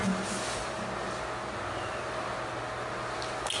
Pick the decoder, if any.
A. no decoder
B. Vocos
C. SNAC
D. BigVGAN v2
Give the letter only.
A